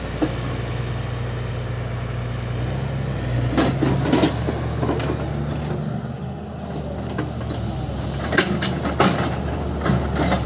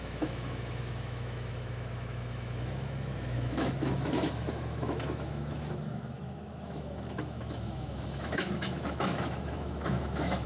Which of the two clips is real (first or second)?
first